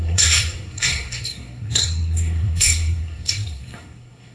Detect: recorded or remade remade